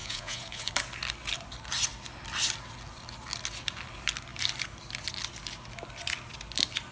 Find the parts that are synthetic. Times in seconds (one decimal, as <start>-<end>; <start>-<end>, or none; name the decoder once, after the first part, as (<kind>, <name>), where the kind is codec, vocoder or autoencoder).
0.0-0.7 (vocoder, Vocos)